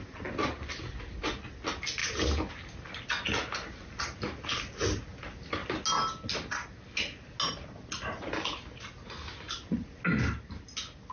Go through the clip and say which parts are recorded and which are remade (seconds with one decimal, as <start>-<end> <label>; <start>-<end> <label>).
0.0-11.1 recorded